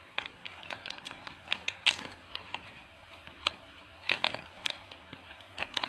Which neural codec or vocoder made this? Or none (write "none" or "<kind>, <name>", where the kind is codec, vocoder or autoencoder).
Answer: codec, SNAC